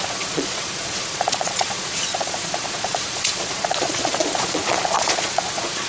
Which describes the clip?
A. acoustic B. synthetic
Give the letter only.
B